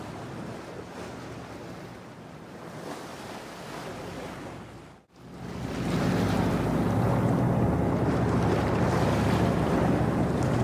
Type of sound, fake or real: real